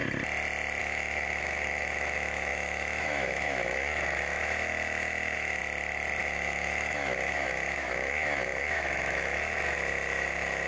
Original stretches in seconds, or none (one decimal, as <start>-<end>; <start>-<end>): 0.0-0.8; 5.6-6.2